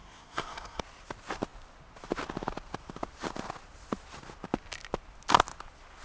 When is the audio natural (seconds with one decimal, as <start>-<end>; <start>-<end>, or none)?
0.8-6.0